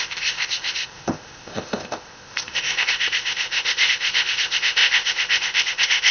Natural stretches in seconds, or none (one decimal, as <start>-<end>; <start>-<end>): none